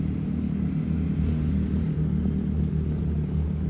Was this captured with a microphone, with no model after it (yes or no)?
yes